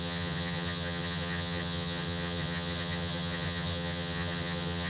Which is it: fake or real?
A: fake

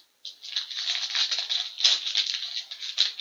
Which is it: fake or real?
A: real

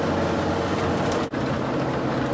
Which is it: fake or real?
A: real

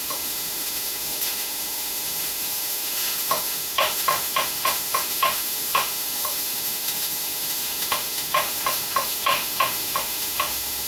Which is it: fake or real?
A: fake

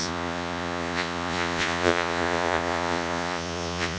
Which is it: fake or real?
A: fake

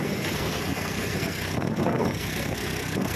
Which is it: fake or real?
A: fake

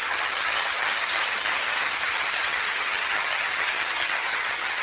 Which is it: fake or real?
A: fake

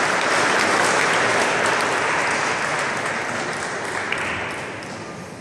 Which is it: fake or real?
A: real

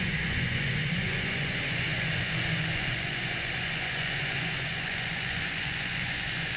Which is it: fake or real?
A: fake